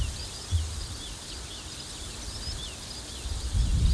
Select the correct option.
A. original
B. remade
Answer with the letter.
A